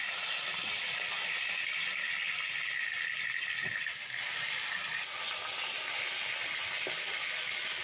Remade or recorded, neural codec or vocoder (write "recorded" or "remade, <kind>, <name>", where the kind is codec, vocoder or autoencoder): recorded